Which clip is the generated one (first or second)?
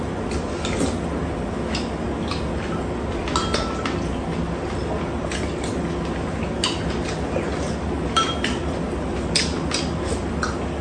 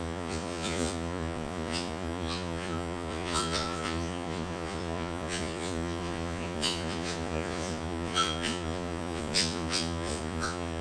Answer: second